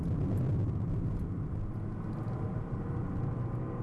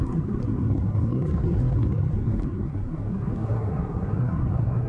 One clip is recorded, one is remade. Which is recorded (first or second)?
first